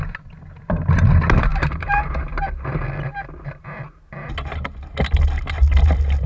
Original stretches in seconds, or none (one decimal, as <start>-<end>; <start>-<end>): 0.0-6.3